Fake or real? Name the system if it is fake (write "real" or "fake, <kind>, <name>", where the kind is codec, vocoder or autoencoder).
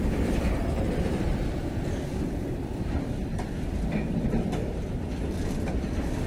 fake, vocoder, BigVGAN v2